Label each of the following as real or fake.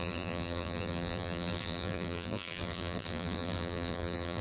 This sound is fake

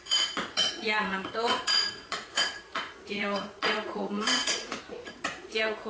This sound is fake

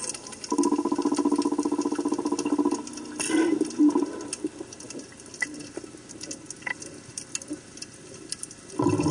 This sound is real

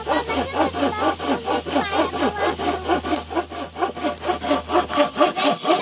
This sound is real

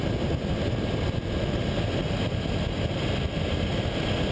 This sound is real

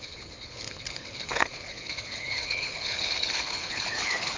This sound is fake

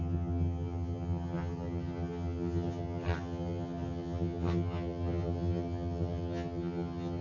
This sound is fake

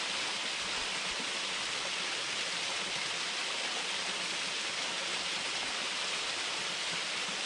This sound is real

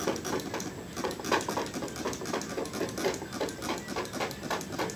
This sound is real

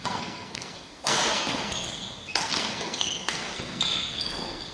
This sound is fake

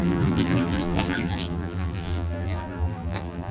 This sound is fake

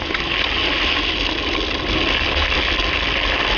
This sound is real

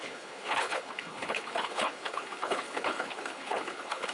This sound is fake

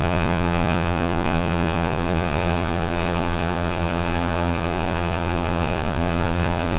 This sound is fake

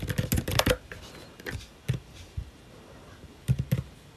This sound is real